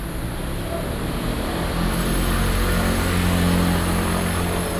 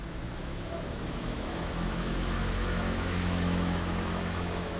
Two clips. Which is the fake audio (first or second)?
second